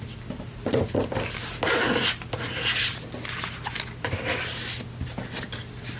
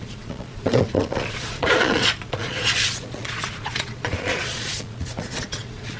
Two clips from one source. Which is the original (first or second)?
first